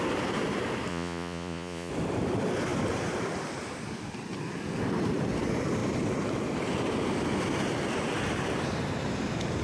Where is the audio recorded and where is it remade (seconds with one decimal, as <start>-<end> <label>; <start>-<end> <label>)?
0.0-0.9 recorded; 0.9-1.9 remade; 1.9-9.6 recorded